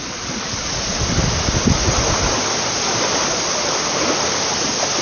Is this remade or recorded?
recorded